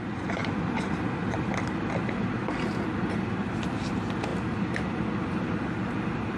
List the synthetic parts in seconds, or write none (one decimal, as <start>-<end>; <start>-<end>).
none